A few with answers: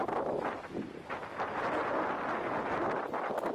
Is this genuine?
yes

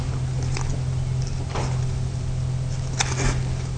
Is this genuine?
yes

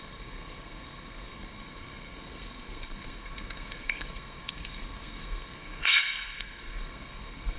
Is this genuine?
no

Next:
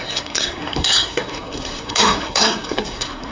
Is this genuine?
no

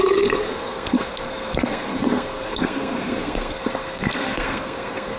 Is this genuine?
no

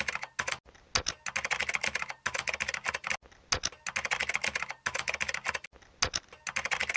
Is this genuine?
yes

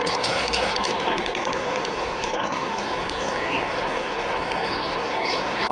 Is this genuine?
no